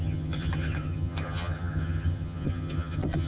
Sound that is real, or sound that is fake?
fake